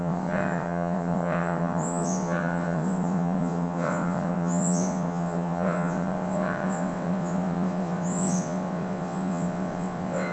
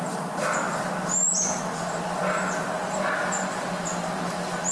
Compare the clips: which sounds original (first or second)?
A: second